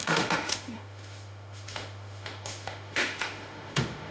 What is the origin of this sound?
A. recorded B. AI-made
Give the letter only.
B